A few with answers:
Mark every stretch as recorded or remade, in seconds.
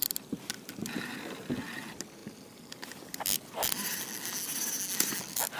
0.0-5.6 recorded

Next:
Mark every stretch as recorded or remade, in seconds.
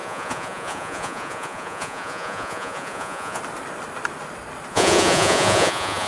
0.0-3.4 remade; 3.4-4.7 recorded; 4.7-6.1 remade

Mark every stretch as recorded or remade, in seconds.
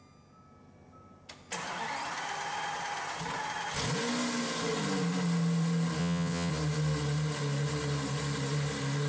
0.0-6.0 recorded; 6.0-6.5 remade; 6.5-9.1 recorded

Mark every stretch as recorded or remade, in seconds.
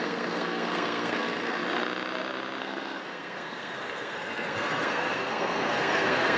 0.0-1.6 remade; 1.6-2.6 recorded; 2.6-6.4 remade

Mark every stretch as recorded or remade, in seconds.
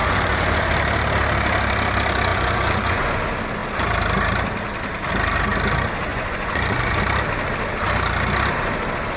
0.0-0.7 remade; 0.7-2.3 recorded; 2.3-3.2 remade; 3.2-6.1 recorded; 6.1-7.0 remade; 7.0-9.2 recorded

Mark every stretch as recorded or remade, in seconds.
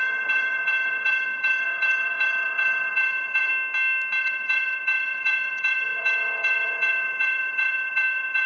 0.0-3.5 remade; 3.5-4.2 recorded; 4.2-8.5 remade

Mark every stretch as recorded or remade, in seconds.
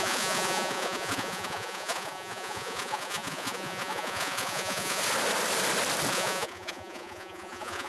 0.0-5.0 remade; 5.0-6.1 recorded; 6.1-7.9 remade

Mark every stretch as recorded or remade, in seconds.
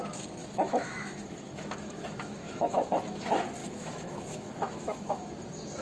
0.0-0.4 recorded; 0.4-2.9 remade; 2.9-3.6 recorded; 3.6-5.3 remade; 5.3-5.8 recorded